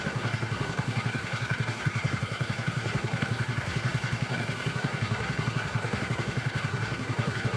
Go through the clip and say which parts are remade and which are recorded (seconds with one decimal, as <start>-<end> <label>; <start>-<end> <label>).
0.0-7.6 remade